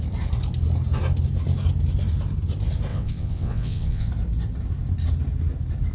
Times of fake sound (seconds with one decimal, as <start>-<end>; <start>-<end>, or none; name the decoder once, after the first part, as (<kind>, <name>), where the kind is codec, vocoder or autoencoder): 2.9-4.1 (vocoder, WaveNeXt)

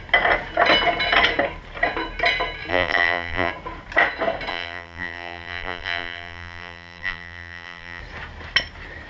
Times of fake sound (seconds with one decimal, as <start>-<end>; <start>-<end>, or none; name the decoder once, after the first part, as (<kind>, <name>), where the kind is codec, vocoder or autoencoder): 2.7-3.5 (vocoder, BigVGAN v2); 4.5-8.0